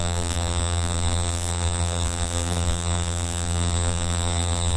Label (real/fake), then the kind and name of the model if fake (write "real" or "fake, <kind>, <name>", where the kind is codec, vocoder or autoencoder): fake, vocoder, BigVGAN v2